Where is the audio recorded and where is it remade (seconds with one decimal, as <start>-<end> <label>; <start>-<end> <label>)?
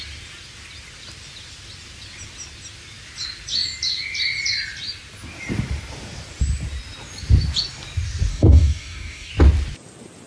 0.0-8.3 recorded; 8.3-9.3 remade; 9.3-10.3 recorded